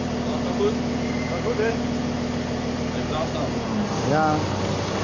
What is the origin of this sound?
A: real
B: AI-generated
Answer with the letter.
A